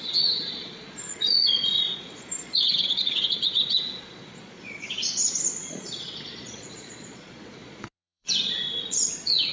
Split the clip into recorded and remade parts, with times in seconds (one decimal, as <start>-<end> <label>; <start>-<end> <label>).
0.0-9.5 remade